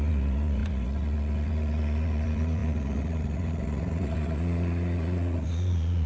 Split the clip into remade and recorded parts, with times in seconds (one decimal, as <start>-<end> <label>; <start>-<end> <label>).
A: 0.0-6.1 remade

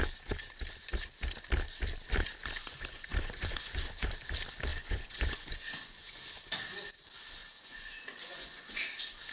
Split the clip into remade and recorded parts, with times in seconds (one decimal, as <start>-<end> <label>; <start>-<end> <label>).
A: 0.0-2.6 recorded; 2.6-4.1 remade; 4.1-4.7 recorded; 4.7-6.2 remade; 6.2-7.4 recorded; 7.4-8.8 remade; 8.8-9.3 recorded

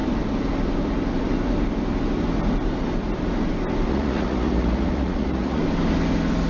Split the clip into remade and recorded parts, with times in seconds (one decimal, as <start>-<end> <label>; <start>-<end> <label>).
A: 0.0-3.9 recorded; 3.9-5.6 remade; 5.6-6.5 recorded

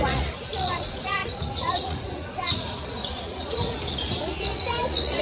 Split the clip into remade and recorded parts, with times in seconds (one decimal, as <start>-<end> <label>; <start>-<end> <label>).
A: 0.0-5.2 remade

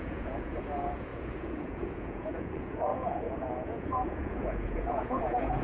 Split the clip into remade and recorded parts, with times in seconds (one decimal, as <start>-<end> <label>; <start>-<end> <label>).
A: 0.0-5.6 remade

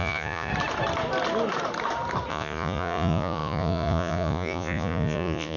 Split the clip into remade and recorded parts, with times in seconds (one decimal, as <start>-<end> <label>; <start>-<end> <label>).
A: 0.0-0.5 remade; 0.5-2.3 recorded; 2.3-5.6 remade

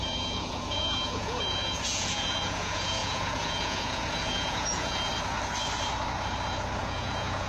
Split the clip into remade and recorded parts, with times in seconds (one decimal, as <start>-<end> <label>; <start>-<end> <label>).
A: 0.0-5.1 remade; 5.1-6.8 recorded; 6.8-7.5 remade

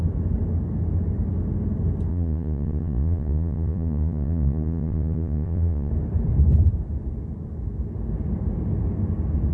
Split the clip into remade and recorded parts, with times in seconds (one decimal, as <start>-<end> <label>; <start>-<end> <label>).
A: 0.0-2.1 recorded; 2.1-5.9 remade; 5.9-9.5 recorded